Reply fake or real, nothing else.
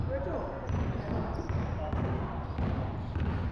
real